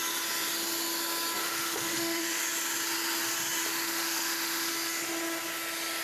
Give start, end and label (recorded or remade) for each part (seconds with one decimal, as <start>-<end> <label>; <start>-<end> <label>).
0.0-1.4 recorded; 1.4-2.4 remade; 2.4-3.7 recorded; 3.7-4.7 remade; 4.7-6.0 recorded